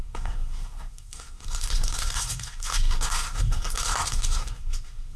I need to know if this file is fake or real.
fake